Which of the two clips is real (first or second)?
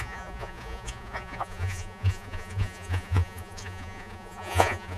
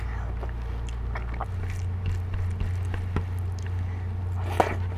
second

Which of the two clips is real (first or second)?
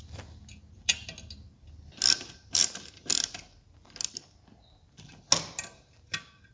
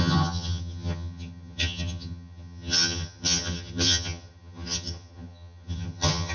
first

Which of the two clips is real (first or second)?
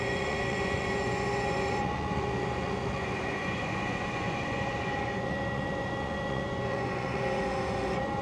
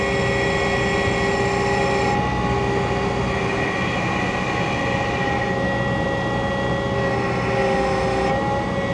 second